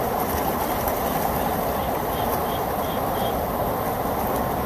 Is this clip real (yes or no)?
yes